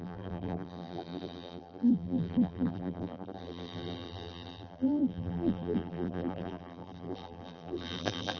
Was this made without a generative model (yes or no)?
no